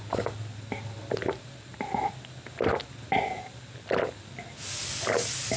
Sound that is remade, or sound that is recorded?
recorded